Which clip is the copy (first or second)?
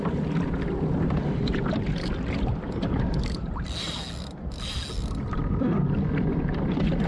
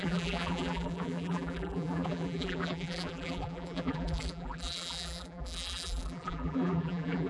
second